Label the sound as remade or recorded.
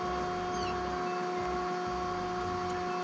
recorded